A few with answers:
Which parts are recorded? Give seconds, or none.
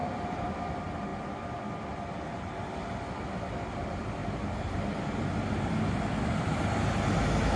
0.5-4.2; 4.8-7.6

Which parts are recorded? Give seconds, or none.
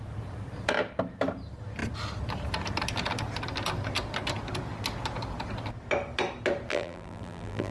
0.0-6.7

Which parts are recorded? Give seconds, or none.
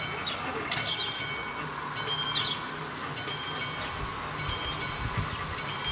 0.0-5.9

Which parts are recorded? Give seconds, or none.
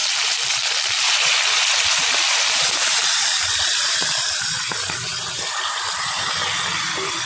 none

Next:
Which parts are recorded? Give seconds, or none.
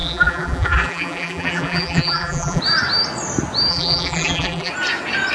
2.6-3.7; 4.7-5.3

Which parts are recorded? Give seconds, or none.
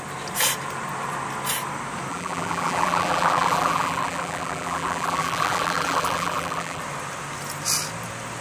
0.0-2.1; 6.8-8.4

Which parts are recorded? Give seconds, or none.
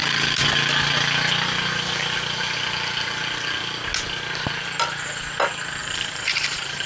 0.0-5.8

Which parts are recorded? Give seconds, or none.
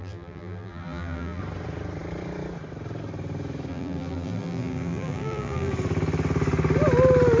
1.4-3.7; 5.7-7.4